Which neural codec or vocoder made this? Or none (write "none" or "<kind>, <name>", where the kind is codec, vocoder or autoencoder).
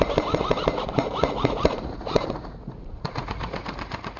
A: vocoder, Vocos